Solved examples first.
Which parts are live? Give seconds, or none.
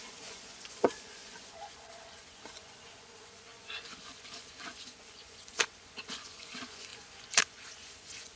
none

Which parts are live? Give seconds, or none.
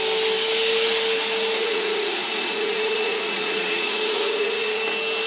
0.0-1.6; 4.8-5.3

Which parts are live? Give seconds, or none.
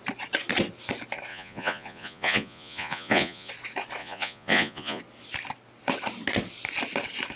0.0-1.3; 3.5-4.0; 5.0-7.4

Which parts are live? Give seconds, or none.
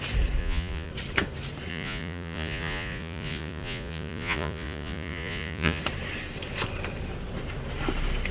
0.0-0.4; 0.9-1.7; 5.8-8.3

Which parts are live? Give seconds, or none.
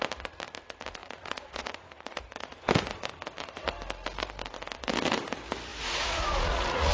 0.0-1.0; 2.6-5.7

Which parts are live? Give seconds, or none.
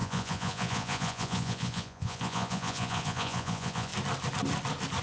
3.9-5.0